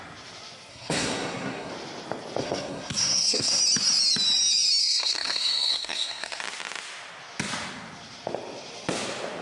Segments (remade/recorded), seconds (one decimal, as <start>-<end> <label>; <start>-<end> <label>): 0.0-0.7 recorded; 0.7-1.7 remade; 1.7-2.4 recorded; 2.4-3.6 remade; 3.6-4.8 recorded; 4.8-6.4 remade; 6.4-9.4 recorded